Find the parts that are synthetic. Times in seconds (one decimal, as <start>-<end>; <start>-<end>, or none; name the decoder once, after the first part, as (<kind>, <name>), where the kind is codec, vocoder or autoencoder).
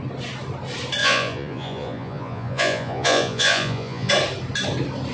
1.0-4.1 (vocoder, Vocos)